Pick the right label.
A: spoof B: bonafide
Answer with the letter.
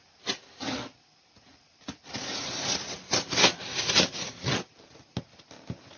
B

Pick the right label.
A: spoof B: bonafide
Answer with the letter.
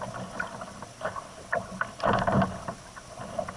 B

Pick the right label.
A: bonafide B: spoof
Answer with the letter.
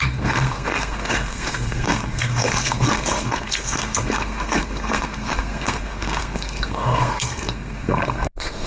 B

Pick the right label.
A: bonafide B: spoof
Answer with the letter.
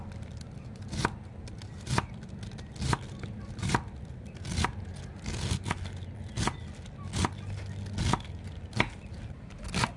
A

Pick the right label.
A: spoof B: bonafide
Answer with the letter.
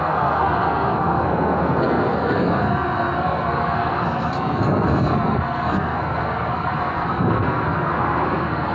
A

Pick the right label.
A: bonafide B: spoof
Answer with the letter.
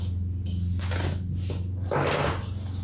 A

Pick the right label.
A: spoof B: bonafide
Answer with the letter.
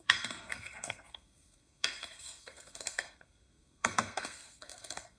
A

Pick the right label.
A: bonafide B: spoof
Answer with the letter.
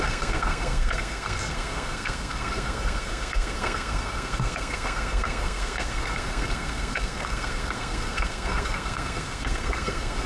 B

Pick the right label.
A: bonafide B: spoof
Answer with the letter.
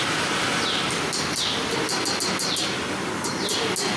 A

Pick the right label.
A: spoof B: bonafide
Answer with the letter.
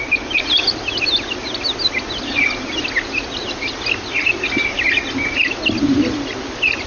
B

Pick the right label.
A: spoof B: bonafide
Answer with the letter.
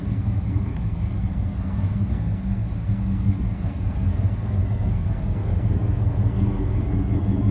A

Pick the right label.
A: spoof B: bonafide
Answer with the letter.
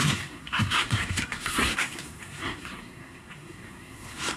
A